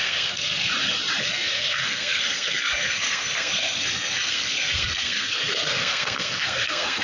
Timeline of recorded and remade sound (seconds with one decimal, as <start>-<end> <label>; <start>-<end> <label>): 0.0-0.7 remade; 0.7-1.2 recorded; 1.2-7.0 remade